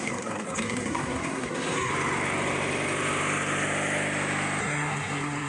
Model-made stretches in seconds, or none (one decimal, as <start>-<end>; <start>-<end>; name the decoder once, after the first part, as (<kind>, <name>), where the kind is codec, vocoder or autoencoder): 0.0-1.9 (codec, SNAC); 4.6-5.5